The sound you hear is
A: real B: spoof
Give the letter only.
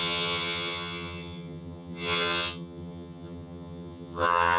B